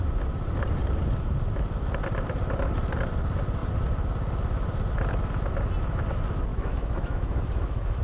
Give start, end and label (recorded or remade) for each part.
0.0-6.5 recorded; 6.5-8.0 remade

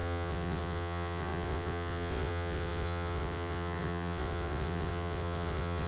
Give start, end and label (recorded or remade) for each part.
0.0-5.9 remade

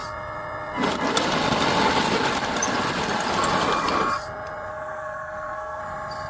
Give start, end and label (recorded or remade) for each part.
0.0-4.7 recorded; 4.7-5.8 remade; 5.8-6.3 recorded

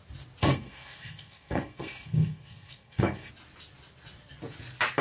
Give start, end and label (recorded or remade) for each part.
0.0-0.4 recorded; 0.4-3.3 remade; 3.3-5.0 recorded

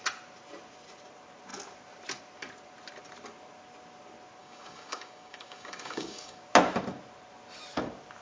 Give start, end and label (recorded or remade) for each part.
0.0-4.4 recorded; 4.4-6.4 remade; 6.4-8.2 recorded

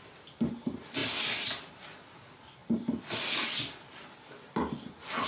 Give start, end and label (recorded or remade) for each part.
0.0-5.3 recorded

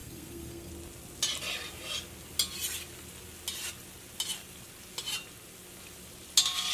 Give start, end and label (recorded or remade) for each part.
0.0-0.7 remade; 0.7-6.7 recorded

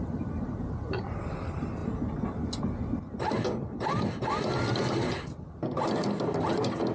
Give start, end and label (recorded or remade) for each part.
0.0-6.9 recorded